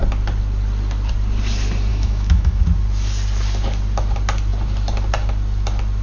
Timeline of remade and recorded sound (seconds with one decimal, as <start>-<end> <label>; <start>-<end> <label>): 0.0-1.9 recorded; 1.9-2.6 remade; 2.6-6.0 recorded